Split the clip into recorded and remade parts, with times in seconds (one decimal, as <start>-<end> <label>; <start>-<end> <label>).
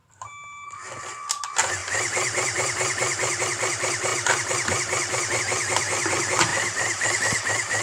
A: 0.0-6.5 recorded; 6.5-7.2 remade; 7.2-7.8 recorded